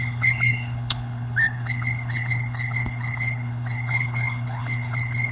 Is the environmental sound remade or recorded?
remade